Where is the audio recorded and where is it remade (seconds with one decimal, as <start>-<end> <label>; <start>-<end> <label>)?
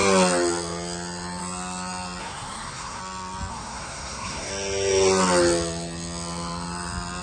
0.0-2.2 recorded; 2.2-3.0 remade; 3.0-3.5 recorded; 3.5-4.5 remade; 4.5-7.2 recorded